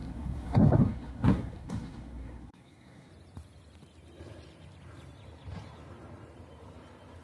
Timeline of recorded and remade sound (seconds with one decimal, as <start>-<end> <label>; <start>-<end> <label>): 0.0-3.1 remade; 3.1-7.2 recorded